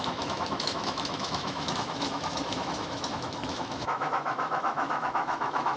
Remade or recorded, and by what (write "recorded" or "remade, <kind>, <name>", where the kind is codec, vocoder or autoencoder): remade, autoencoder, DAC-VAE